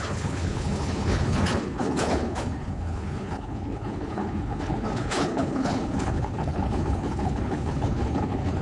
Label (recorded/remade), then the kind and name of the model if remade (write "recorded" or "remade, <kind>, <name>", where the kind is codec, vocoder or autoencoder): remade, codec, HILCodec